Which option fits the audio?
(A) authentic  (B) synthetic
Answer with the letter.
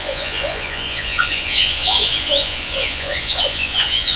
B